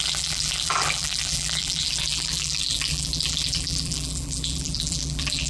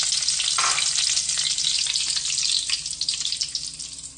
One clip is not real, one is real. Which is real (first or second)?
second